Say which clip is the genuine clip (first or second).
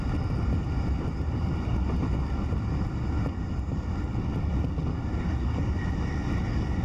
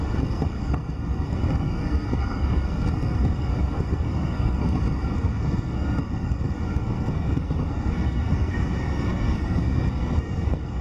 first